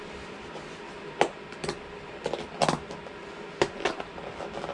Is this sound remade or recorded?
recorded